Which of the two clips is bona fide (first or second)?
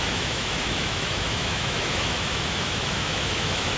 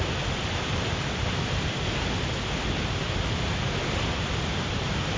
second